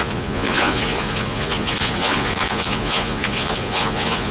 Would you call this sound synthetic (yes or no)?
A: yes